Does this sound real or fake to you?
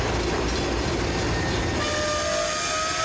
real